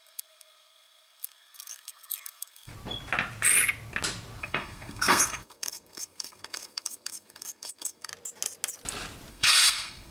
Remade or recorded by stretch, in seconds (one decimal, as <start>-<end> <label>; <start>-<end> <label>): 0.0-2.7 remade; 2.7-4.4 recorded; 4.4-8.1 remade; 8.1-9.3 recorded; 9.3-10.1 remade